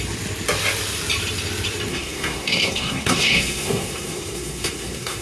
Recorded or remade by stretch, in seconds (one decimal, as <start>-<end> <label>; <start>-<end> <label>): 0.0-1.9 recorded; 1.9-5.2 remade